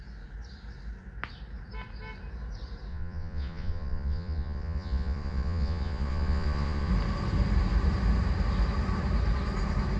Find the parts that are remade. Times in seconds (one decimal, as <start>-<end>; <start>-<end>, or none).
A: 2.9-6.9